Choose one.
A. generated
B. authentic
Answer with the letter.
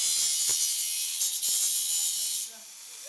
B